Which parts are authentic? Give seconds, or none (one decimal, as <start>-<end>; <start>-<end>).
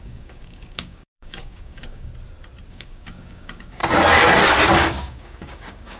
2.1-2.7; 3.8-4.7